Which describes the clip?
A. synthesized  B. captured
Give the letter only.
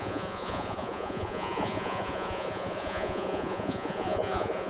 A